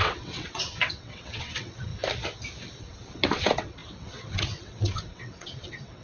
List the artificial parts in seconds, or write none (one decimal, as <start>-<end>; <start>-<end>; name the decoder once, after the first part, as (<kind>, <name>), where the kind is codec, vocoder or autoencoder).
0.0-1.9 (vocoder, WaveNeXt); 2.8-6.0